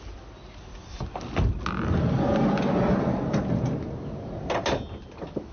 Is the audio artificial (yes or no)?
no